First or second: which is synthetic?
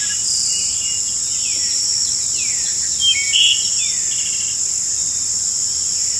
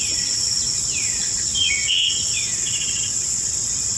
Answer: second